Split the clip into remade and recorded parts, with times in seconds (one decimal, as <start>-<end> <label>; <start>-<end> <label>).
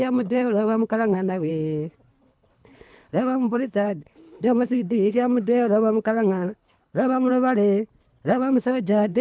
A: 0.0-1.5 remade; 1.5-2.2 recorded; 2.2-7.3 remade; 7.3-8.3 recorded; 8.3-9.2 remade